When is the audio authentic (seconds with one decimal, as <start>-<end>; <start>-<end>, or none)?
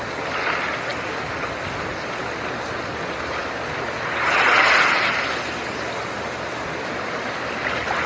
0.0-0.9; 2.5-8.1